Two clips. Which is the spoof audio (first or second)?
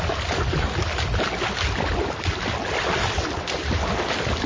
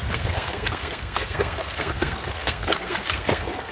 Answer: second